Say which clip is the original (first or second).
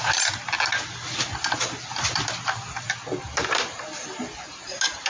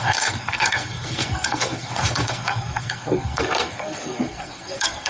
first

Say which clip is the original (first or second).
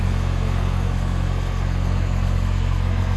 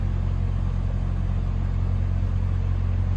second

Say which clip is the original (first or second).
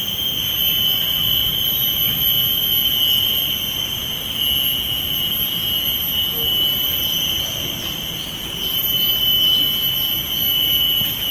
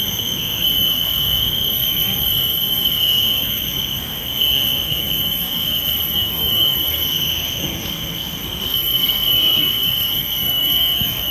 first